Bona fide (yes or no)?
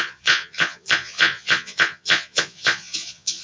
no